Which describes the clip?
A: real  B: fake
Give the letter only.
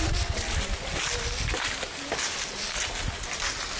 A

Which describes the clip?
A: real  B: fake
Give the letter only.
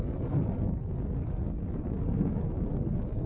A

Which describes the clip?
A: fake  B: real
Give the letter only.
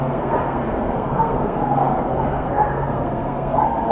A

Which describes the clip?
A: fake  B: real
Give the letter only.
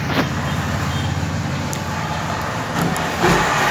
B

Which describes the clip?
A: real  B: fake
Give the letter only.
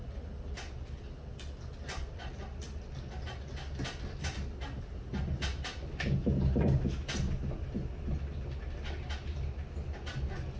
A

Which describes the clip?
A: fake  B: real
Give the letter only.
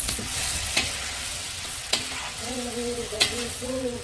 A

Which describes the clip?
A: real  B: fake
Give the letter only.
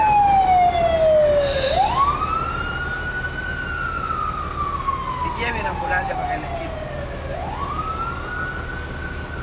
A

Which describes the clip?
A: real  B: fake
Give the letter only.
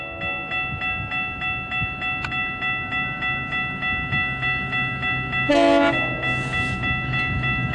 A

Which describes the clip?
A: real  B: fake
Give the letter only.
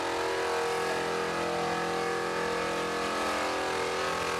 A